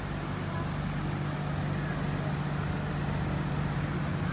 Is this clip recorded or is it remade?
recorded